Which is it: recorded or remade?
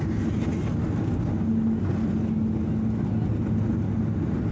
recorded